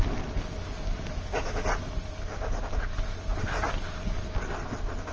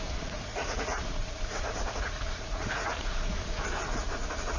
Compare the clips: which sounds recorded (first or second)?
first